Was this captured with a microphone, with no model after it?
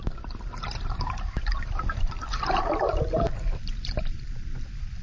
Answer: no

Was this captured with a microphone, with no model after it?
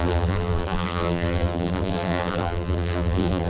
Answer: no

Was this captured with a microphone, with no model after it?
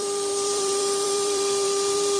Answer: no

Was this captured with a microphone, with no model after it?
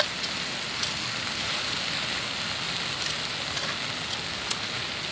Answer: yes